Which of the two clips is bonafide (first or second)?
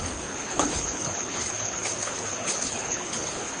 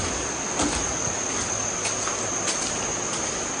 second